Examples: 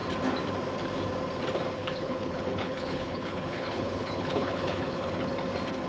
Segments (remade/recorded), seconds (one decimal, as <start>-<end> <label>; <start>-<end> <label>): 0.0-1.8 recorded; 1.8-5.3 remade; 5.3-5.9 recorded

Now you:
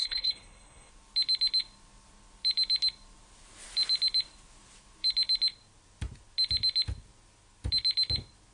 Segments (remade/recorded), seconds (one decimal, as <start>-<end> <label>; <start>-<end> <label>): 0.0-0.9 remade; 0.9-8.5 recorded

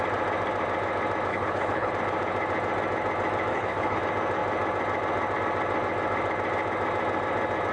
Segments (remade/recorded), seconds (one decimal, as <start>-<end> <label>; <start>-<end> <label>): 0.0-1.3 recorded; 1.3-1.9 remade; 1.9-3.5 recorded; 3.5-4.0 remade; 4.0-7.7 recorded

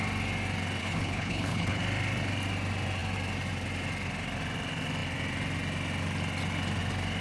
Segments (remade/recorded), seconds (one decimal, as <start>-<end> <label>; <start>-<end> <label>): 0.0-0.8 recorded; 0.8-1.8 remade; 1.8-7.2 recorded

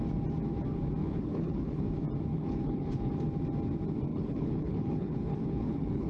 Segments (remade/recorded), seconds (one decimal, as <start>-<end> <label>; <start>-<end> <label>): 0.0-1.0 recorded; 1.0-1.8 remade; 1.8-2.3 recorded; 2.3-3.1 remade; 3.1-4.1 recorded; 4.1-6.1 remade